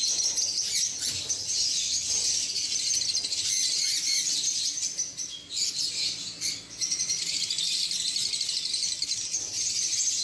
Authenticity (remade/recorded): recorded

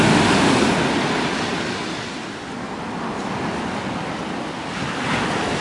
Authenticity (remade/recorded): recorded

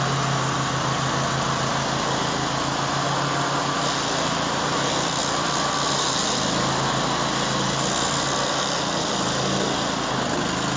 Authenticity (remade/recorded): recorded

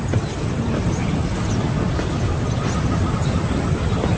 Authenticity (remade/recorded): recorded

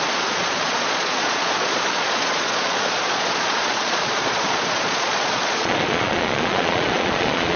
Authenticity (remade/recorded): remade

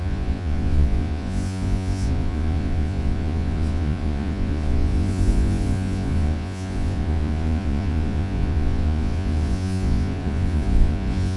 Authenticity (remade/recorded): remade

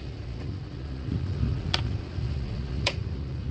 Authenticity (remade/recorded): remade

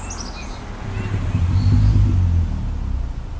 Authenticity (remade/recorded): recorded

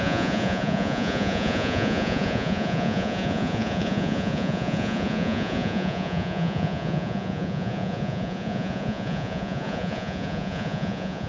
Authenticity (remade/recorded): remade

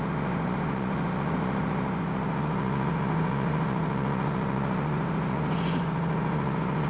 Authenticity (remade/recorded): remade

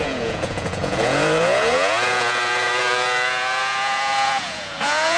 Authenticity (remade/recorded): remade